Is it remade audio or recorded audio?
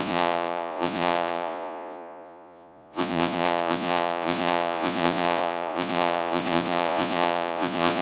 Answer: remade